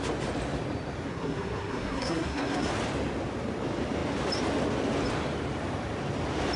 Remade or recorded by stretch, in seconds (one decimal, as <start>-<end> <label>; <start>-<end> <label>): 0.0-1.1 recorded; 1.1-2.7 remade; 2.7-6.6 recorded